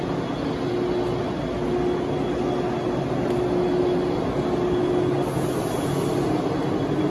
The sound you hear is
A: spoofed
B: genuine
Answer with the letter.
B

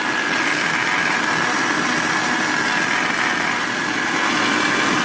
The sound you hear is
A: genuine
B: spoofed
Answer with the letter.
A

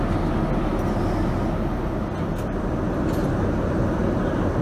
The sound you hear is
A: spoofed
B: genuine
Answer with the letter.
B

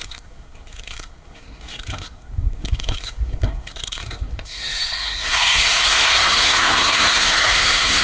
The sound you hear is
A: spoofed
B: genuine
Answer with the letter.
A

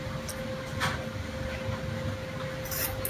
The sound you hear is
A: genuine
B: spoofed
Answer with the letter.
A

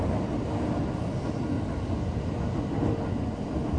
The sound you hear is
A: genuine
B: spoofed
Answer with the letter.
A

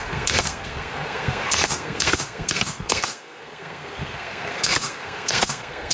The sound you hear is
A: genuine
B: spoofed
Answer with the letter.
B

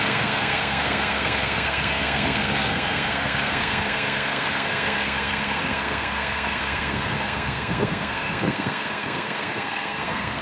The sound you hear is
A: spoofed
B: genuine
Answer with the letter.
A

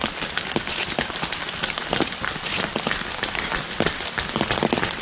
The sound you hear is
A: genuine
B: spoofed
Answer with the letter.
A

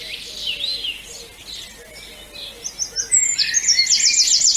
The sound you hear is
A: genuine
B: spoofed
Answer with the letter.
A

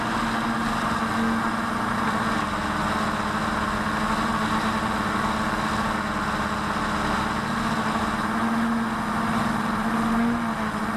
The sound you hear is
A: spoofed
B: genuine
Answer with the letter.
B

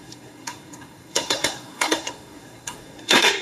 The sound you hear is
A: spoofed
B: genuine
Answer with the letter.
A